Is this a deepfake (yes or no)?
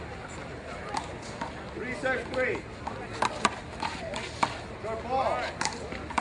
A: no